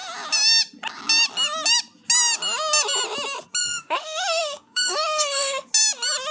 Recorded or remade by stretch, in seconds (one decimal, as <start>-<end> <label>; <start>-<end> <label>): 0.0-3.6 recorded; 3.6-5.7 remade; 5.7-6.3 recorded